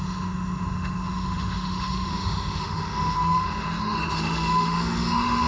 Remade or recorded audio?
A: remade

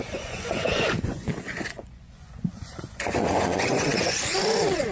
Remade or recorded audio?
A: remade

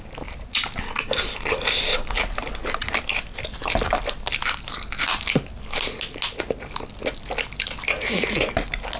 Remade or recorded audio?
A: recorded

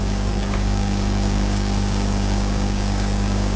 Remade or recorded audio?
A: remade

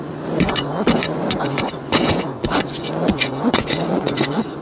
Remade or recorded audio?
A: remade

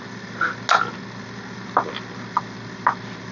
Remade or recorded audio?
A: recorded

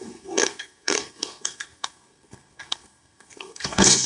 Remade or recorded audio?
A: remade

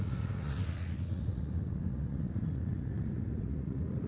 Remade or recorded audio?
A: remade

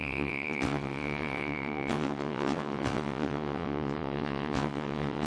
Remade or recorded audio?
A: remade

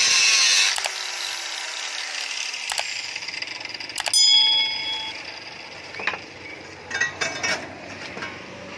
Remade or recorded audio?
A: recorded